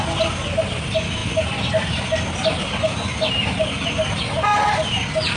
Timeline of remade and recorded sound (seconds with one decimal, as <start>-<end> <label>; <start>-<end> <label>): 0.0-5.4 recorded